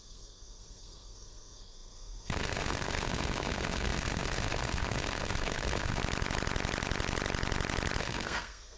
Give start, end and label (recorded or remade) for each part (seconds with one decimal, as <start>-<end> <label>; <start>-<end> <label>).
0.0-6.0 remade; 6.0-8.0 recorded; 8.0-8.8 remade